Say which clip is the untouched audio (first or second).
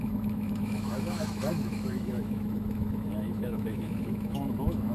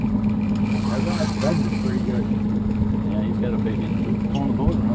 second